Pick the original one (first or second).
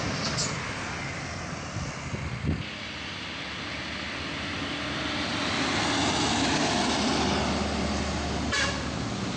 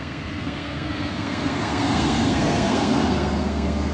first